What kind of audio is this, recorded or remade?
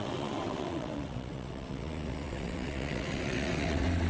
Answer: remade